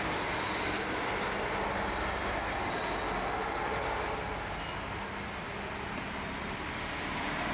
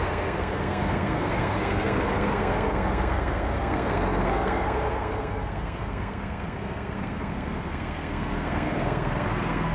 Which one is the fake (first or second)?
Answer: second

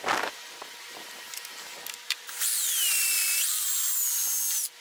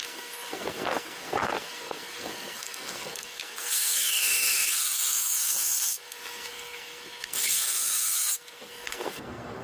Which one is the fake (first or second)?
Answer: second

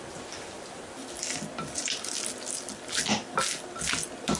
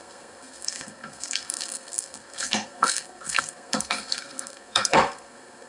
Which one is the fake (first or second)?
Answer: second